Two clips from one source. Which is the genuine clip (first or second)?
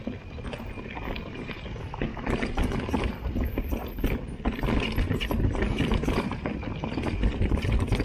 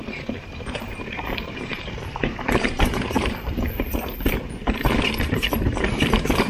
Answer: first